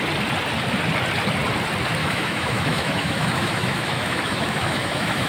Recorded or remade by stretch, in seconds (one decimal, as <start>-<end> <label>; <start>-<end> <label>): 0.0-2.0 recorded; 2.0-5.3 remade